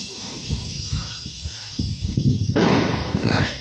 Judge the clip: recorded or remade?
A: remade